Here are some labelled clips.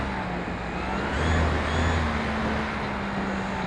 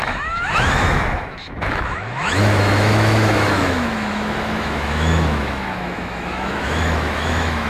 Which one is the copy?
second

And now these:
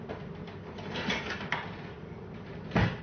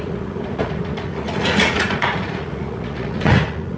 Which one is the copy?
second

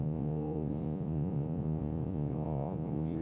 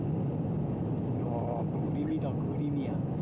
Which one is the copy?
first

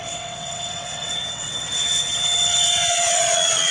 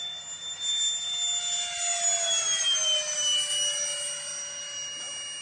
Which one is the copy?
first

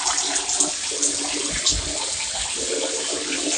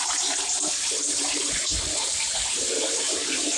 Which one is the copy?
second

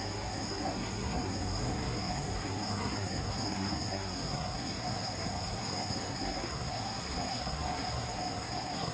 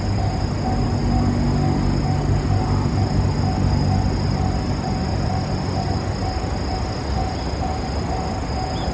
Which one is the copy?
first